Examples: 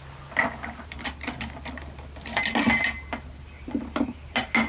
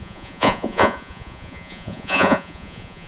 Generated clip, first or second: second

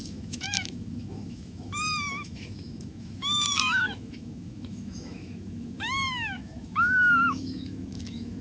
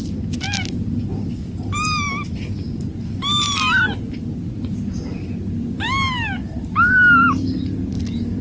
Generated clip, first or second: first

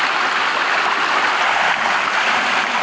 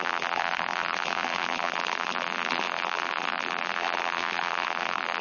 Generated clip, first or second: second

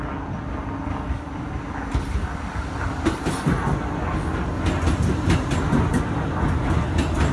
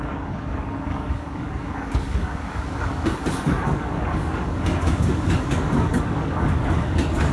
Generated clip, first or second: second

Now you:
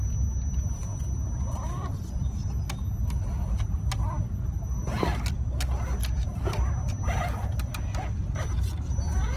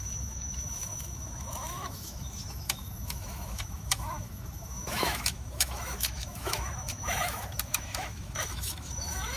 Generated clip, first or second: second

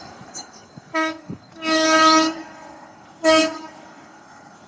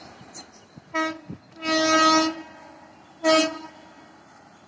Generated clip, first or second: first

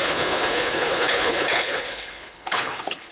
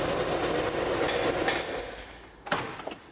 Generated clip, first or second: first